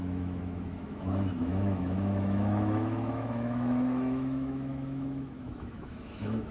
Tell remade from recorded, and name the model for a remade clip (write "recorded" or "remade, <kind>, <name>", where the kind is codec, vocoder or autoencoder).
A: remade, autoencoder, DAC-VAE